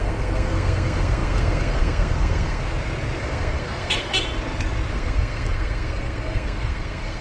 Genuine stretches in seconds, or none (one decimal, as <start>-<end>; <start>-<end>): 2.6-3.2; 4.1-4.9